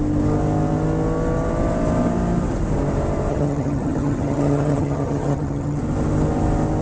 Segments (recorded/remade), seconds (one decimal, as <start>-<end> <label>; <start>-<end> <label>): 0.0-3.3 recorded; 3.3-5.8 remade; 5.8-6.8 recorded